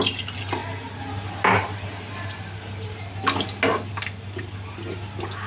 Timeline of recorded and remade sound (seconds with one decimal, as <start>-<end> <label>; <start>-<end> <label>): 0.0-5.5 recorded

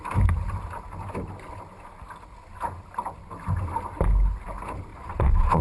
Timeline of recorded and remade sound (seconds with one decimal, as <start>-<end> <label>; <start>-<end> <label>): 0.0-4.9 recorded; 4.9-5.6 remade

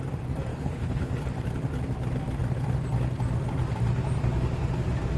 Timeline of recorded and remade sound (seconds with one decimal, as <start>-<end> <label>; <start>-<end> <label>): 0.0-0.5 recorded; 0.5-1.1 remade; 1.1-5.2 recorded

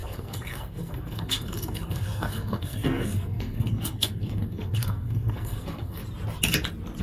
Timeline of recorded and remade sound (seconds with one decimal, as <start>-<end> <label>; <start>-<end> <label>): 0.0-6.0 remade; 6.0-7.0 recorded

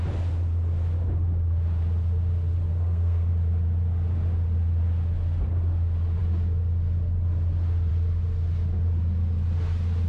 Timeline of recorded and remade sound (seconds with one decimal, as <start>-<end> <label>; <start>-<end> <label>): 0.0-2.7 recorded; 2.7-3.3 remade; 3.3-10.1 recorded

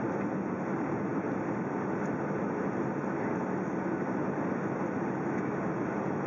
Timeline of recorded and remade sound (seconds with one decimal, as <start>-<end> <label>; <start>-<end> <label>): 0.0-6.3 recorded

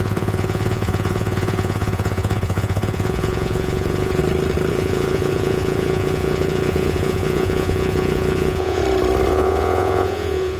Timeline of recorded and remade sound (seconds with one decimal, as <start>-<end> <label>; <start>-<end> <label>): 0.0-4.2 remade; 4.2-4.7 recorded; 4.7-8.8 remade; 8.8-9.3 recorded; 9.3-10.6 remade

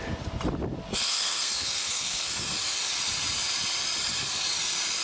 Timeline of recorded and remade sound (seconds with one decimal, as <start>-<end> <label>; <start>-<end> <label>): 0.0-0.9 recorded; 0.9-2.4 remade; 2.4-5.0 recorded